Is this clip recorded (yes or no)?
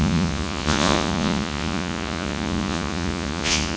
no